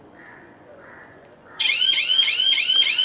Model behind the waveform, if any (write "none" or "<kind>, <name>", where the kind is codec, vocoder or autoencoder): vocoder, Vocos